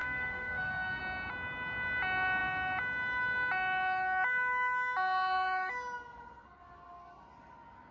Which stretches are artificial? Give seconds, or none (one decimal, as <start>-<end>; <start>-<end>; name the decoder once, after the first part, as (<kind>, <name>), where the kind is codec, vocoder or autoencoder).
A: 0.0-1.0 (codec, SNAC)